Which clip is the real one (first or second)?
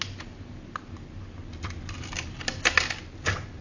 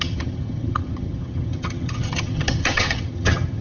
first